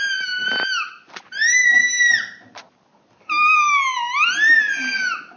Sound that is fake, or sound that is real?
real